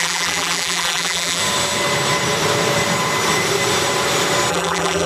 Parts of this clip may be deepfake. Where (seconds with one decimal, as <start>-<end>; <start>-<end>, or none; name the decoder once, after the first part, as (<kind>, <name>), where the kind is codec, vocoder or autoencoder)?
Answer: 0.0-1.4 (vocoder, BigVGAN v2); 4.5-5.1